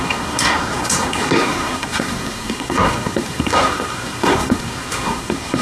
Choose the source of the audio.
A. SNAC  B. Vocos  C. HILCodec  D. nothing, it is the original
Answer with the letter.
A